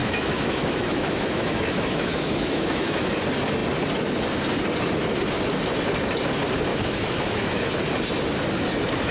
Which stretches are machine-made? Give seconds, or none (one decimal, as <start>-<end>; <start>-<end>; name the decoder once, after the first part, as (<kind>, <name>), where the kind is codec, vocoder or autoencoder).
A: 0.0-3.2 (autoencoder, DAC-VAE); 6.7-7.7